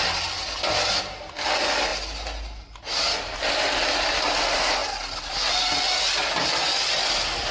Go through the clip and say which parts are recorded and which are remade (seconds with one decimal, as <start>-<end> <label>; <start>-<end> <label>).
0.0-7.5 recorded